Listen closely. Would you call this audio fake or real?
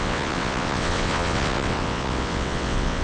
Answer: fake